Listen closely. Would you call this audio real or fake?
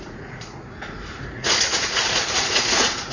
fake